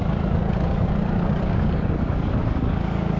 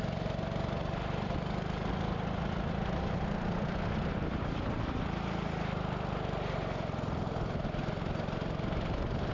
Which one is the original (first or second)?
second